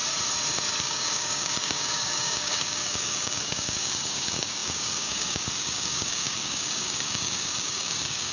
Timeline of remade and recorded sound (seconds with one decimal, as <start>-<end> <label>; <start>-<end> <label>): 0.0-0.8 recorded; 0.8-8.3 remade